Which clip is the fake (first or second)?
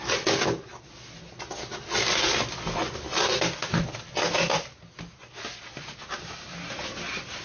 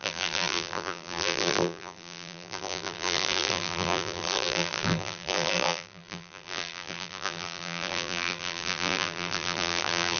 second